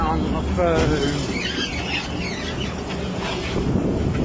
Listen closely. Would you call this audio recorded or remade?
recorded